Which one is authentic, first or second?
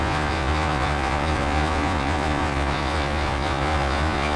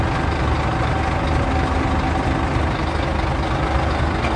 second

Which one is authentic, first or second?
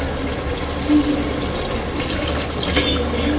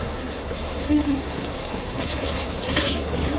first